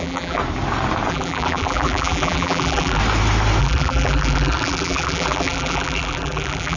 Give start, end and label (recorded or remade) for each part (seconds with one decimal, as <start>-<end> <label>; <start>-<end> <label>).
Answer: 0.0-0.4 remade; 0.4-1.1 recorded; 1.1-3.0 remade; 3.0-3.6 recorded; 3.6-6.8 remade